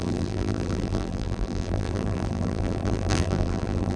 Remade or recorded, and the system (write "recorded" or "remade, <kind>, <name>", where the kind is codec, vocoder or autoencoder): remade, vocoder, BigVGAN v2